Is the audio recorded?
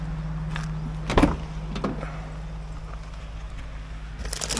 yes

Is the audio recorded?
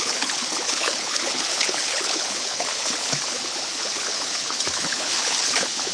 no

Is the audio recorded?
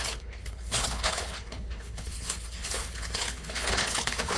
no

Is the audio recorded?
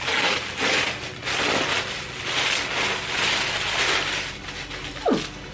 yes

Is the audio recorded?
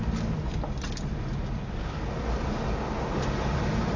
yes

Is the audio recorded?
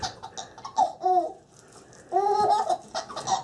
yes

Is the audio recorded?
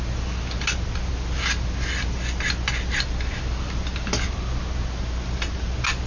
yes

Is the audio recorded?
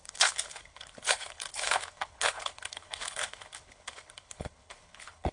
no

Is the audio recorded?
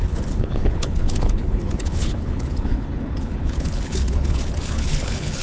no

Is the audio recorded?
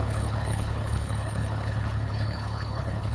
no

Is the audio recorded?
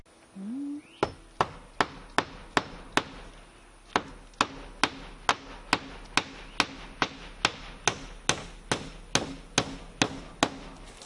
yes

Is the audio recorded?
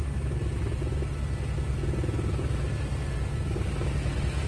yes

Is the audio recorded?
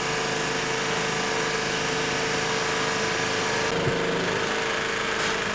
yes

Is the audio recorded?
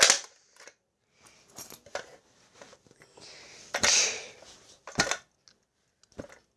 yes